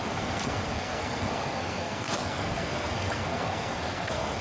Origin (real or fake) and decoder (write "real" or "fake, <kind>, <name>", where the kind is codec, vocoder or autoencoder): fake, codec, SNAC